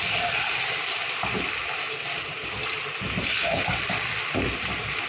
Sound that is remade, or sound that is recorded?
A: recorded